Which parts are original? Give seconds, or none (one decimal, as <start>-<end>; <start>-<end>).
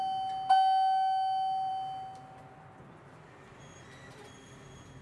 0.0-5.0